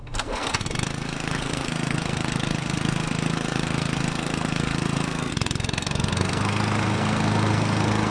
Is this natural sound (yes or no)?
no